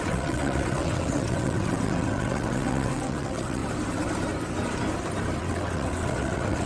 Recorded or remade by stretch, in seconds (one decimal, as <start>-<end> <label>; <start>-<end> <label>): 0.0-3.6 remade; 3.6-5.4 recorded; 5.4-6.7 remade